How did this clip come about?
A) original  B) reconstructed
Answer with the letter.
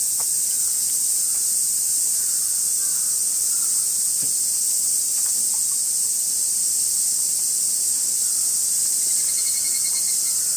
A